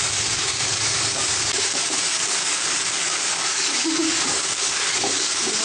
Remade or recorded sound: remade